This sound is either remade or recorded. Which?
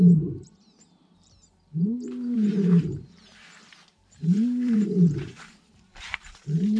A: remade